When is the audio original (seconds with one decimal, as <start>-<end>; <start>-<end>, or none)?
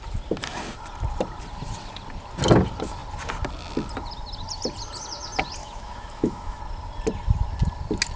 0.0-5.6; 6.6-8.2